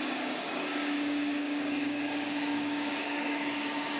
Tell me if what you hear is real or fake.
fake